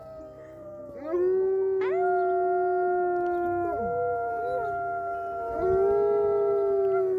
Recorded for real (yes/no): yes